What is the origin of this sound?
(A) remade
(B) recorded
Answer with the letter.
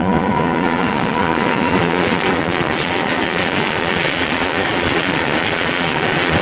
A